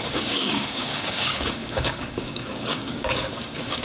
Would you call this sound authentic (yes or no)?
no